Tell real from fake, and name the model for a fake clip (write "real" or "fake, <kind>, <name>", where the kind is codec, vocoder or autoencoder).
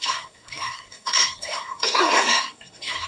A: fake, codec, SNAC